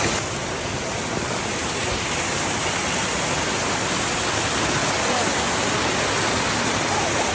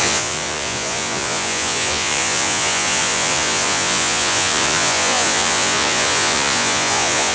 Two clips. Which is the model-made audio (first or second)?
second